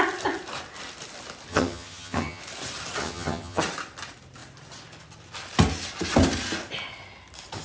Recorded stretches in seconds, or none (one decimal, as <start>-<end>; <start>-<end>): 0.0-1.5; 2.4-3.0; 3.6-7.6